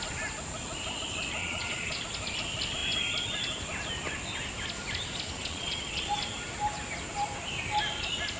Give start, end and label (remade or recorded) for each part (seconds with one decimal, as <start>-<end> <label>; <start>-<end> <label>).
0.0-1.4 recorded; 1.4-2.0 remade; 2.0-5.4 recorded; 5.4-6.1 remade; 6.1-8.4 recorded